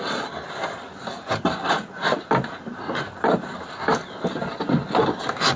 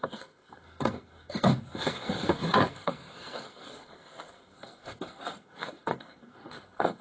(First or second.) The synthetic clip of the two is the second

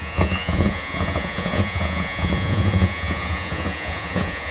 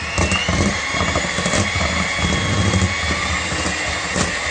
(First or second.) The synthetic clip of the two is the first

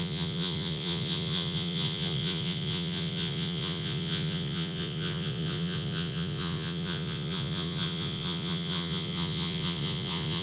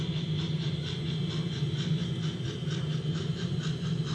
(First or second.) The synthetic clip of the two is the first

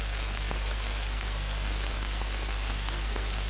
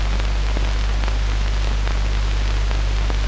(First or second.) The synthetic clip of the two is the first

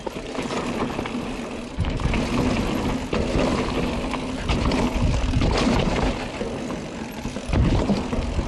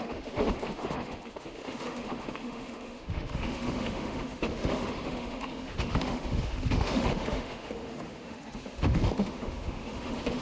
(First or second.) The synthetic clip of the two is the second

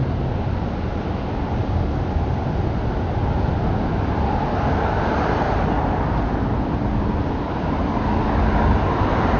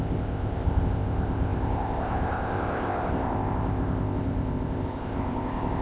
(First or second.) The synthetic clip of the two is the second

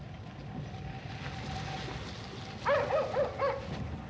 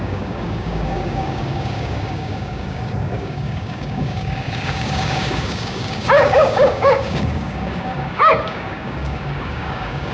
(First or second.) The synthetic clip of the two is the second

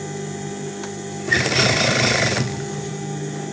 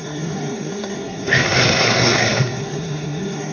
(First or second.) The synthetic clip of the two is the second